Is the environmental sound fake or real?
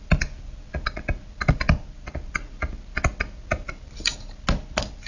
real